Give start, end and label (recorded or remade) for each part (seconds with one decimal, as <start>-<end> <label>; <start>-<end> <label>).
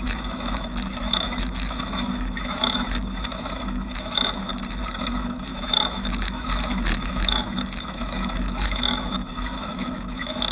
0.0-4.5 remade; 4.5-5.0 recorded; 5.0-10.5 remade